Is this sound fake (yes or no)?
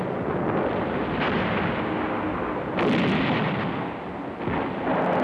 no